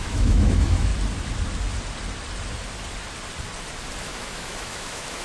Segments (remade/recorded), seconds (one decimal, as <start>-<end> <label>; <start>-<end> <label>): 0.0-0.9 remade; 0.9-4.0 recorded; 4.0-5.2 remade